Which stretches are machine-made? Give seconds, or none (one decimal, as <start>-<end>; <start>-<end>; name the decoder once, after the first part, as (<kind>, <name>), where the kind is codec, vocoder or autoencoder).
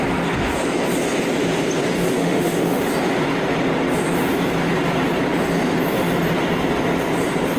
2.2-2.8 (autoencoder, DAC-VAE)